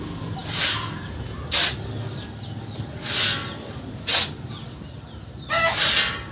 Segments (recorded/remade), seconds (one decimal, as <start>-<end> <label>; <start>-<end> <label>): 0.0-6.3 recorded